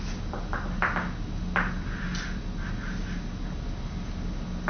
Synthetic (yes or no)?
no